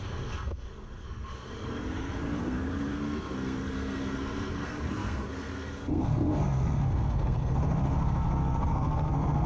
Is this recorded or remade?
remade